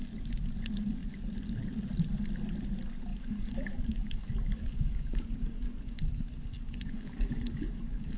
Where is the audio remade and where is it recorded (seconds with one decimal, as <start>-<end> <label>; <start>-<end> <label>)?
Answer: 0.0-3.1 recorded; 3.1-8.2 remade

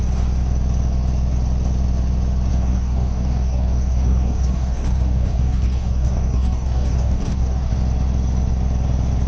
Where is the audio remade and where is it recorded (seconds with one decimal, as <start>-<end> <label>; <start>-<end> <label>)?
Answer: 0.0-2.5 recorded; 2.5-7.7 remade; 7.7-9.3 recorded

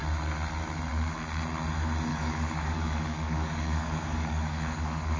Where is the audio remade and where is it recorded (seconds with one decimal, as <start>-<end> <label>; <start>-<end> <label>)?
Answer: 0.0-2.1 recorded; 2.1-5.2 remade

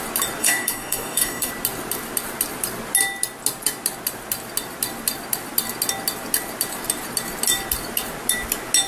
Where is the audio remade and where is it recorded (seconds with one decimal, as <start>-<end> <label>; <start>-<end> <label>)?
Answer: 0.0-0.4 recorded; 0.4-1.5 remade; 1.5-8.9 recorded